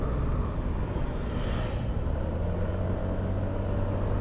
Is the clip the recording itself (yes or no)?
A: yes